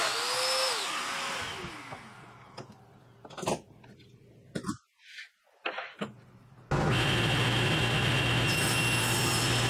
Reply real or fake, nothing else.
real